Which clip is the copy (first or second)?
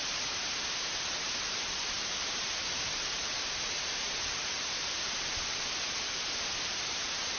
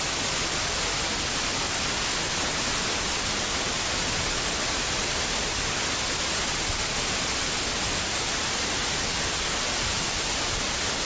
first